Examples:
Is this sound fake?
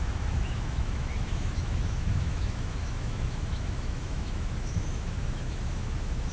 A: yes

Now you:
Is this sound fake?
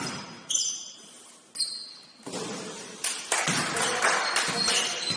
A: no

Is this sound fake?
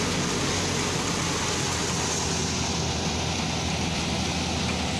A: no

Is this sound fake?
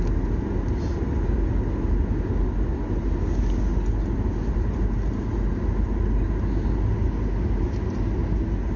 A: no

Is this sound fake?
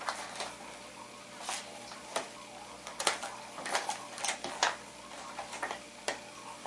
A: no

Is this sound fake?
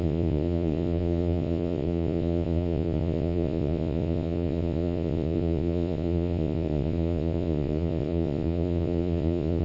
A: yes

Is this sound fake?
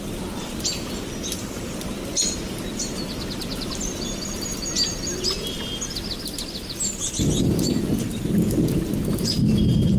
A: no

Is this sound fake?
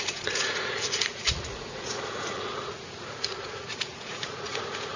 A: yes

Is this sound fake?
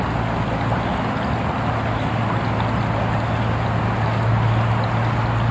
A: no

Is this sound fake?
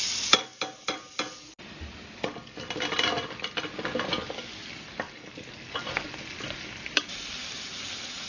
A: no